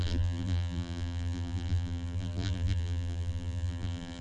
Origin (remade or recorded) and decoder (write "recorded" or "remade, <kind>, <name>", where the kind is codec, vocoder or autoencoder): remade, vocoder, BigVGAN v2